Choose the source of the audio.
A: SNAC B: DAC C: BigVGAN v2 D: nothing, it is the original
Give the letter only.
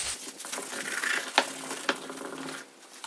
D